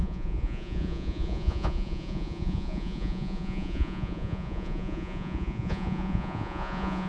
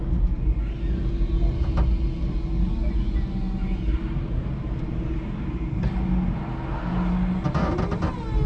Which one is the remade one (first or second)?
first